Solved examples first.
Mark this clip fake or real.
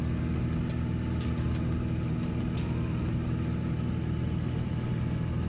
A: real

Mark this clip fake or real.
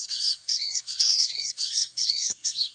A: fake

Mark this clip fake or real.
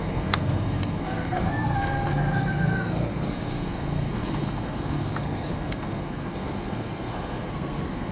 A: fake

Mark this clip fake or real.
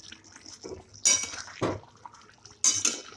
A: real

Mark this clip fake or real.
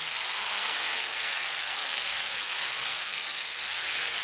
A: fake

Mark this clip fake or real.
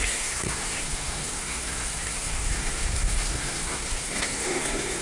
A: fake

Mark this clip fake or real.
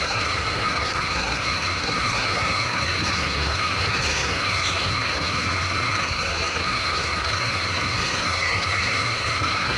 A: fake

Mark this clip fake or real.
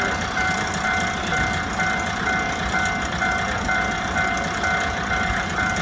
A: real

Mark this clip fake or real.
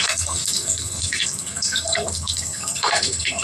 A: fake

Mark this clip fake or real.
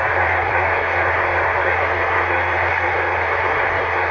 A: fake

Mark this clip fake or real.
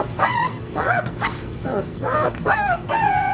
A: fake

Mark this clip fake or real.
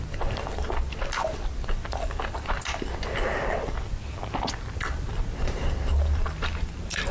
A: real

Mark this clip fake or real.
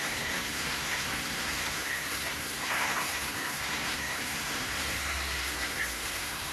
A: fake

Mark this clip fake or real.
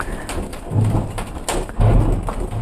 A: real